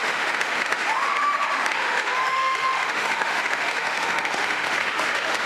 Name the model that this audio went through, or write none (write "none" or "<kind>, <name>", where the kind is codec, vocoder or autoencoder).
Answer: autoencoder, DAC-VAE